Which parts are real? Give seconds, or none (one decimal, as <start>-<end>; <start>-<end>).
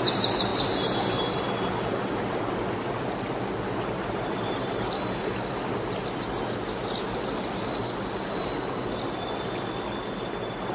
0.0-10.7